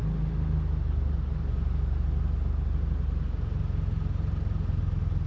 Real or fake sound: real